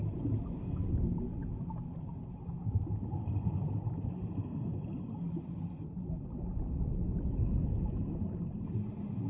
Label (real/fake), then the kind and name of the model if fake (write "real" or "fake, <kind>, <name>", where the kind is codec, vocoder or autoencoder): real